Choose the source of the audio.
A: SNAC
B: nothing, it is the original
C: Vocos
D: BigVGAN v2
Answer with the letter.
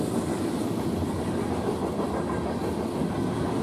B